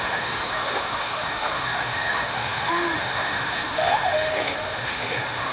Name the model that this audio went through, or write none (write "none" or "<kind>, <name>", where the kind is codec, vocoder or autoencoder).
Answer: autoencoder, DAC-VAE